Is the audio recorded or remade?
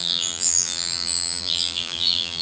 remade